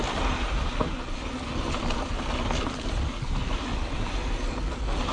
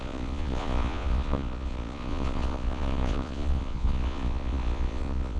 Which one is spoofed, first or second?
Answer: second